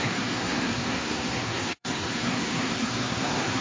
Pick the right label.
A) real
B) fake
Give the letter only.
B